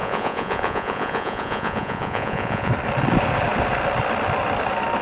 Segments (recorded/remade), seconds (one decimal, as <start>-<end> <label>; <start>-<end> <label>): 0.0-2.7 remade; 2.7-5.0 recorded